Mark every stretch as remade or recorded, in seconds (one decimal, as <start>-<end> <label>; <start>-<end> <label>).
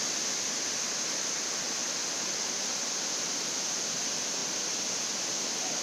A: 0.0-5.8 recorded